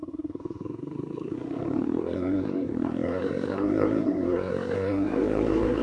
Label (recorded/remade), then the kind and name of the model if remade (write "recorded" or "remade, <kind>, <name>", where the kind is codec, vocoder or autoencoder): remade, codec, SNAC